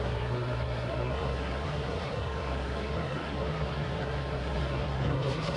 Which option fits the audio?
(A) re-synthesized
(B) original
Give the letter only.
A